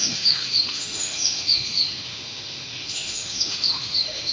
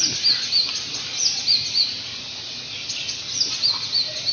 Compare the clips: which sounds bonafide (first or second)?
second